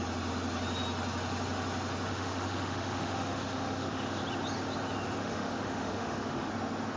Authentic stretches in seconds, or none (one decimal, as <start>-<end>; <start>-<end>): 0.0-2.1; 4.2-5.2; 6.5-7.0